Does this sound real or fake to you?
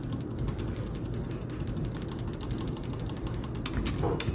real